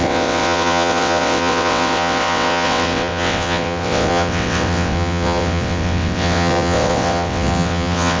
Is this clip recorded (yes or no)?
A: no